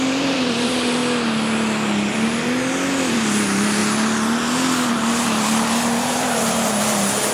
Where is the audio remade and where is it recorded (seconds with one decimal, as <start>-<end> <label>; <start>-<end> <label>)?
0.0-1.0 remade; 1.0-3.1 recorded; 3.1-3.8 remade; 3.8-4.9 recorded; 4.9-7.3 remade